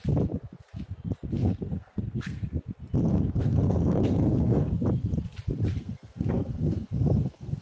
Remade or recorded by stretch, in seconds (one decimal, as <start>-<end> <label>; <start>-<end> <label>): 0.0-1.4 recorded; 1.4-2.6 remade; 2.6-3.1 recorded; 3.1-4.7 remade; 4.7-5.7 recorded; 5.7-7.6 remade